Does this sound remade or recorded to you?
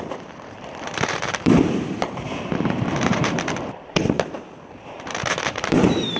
remade